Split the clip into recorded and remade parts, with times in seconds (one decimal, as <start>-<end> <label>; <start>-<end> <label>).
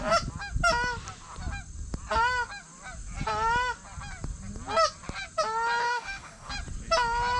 0.0-5.8 recorded; 5.8-6.5 remade; 6.5-7.4 recorded